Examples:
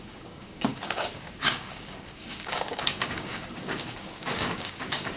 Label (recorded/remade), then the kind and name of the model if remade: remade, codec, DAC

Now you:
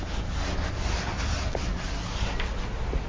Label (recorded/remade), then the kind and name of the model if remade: recorded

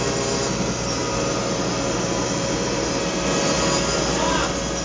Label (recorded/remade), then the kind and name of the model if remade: recorded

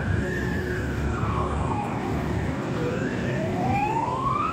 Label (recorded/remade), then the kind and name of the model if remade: remade, codec, DAC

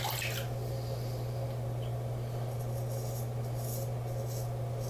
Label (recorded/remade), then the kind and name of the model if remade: recorded